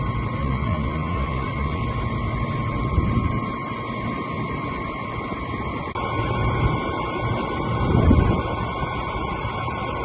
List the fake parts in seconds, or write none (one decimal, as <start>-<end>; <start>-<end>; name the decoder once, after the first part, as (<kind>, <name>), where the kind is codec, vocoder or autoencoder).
0.4-1.8 (vocoder, Vocos)